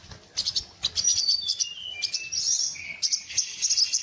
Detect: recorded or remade recorded